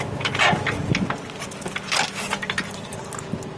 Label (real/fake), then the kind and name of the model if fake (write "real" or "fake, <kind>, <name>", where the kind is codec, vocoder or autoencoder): real